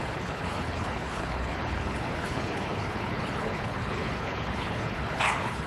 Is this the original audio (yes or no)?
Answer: no